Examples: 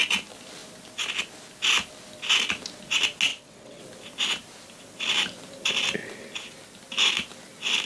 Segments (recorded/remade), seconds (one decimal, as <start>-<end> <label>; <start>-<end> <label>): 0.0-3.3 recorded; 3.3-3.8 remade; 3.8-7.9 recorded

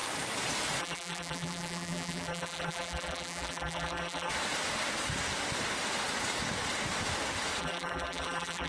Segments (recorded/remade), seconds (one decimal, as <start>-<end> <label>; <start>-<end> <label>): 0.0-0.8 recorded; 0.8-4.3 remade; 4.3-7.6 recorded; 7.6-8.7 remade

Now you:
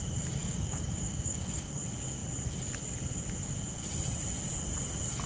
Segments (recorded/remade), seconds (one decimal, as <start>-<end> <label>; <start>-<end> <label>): 0.0-0.4 recorded; 0.4-1.7 remade; 1.7-5.3 recorded

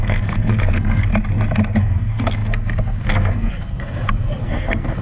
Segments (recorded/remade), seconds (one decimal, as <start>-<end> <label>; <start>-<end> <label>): 0.0-1.1 remade; 1.1-1.8 recorded; 1.8-5.0 remade

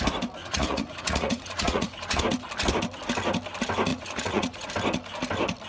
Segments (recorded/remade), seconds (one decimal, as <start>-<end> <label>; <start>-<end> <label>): 0.0-0.4 recorded; 0.4-2.2 remade; 2.2-3.9 recorded; 3.9-4.7 remade; 4.7-5.7 recorded